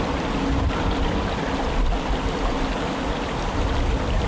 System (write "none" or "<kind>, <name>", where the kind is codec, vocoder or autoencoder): none